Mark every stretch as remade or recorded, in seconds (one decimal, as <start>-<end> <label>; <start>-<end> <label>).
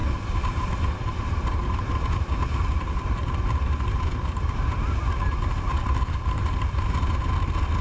0.0-5.7 recorded; 5.7-7.1 remade; 7.1-7.8 recorded